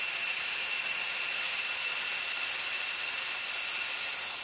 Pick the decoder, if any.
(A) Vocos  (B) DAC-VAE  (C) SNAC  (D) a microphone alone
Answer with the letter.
D